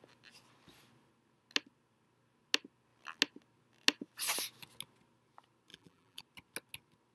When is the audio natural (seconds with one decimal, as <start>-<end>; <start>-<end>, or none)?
0.0-5.7; 6.2-7.1